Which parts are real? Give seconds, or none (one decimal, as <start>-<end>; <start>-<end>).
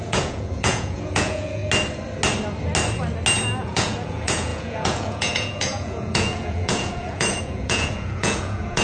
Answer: 1.6-3.6